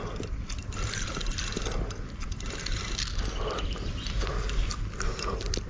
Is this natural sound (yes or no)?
yes